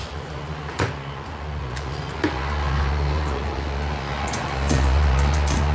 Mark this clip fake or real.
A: fake